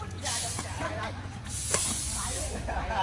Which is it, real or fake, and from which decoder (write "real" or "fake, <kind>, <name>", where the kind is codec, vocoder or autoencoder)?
fake, vocoder, Vocos